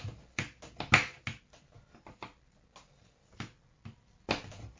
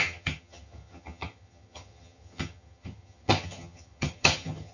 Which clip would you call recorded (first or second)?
first